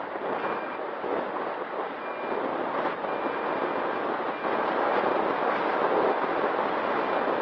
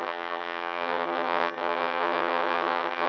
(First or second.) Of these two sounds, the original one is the first